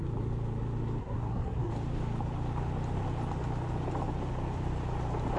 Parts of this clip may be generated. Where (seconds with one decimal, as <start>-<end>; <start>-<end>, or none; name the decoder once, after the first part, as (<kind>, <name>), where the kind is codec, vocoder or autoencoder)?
1.0-1.7 (codec, SNAC)